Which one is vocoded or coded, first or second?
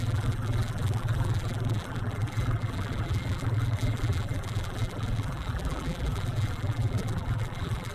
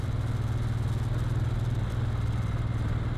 first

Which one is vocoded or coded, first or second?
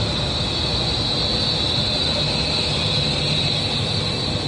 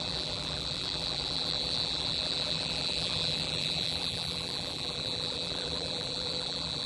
second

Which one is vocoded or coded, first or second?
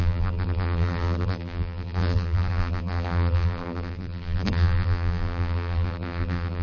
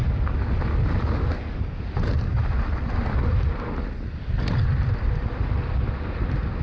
first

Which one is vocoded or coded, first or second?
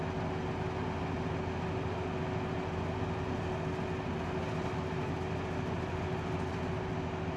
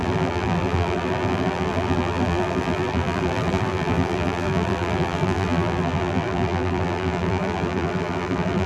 second